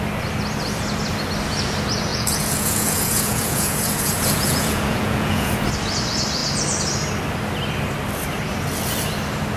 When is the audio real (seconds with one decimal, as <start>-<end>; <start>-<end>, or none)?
0.0-2.1; 5.5-9.6